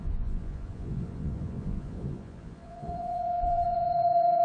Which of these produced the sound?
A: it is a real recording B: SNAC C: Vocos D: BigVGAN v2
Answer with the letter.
C